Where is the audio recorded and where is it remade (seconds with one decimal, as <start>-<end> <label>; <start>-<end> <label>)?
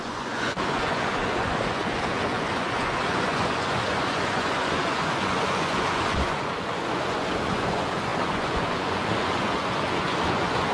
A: 0.0-10.7 remade